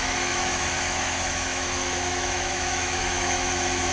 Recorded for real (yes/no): no